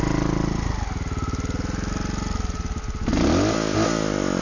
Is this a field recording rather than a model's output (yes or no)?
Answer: yes